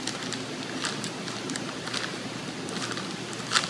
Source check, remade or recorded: recorded